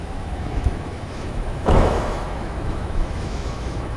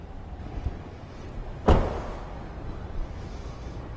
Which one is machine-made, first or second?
first